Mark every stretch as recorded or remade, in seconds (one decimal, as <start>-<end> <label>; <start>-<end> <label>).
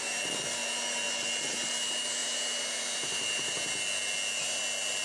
0.0-5.0 recorded